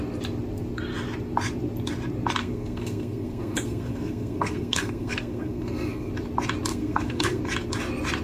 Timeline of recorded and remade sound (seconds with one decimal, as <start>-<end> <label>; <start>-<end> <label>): 0.0-2.4 recorded; 2.4-6.1 remade; 6.1-6.7 recorded; 6.7-7.4 remade; 7.4-8.2 recorded